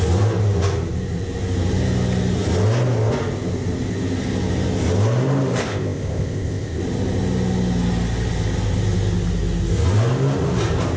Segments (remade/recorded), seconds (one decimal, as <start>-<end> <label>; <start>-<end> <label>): 0.0-5.6 recorded; 5.6-6.8 remade; 6.8-11.0 recorded